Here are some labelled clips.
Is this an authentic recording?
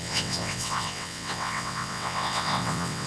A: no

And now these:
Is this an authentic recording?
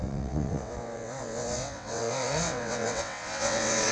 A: no